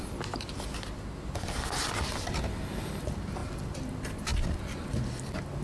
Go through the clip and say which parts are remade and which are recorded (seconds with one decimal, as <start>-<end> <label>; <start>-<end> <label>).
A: 0.0-5.6 recorded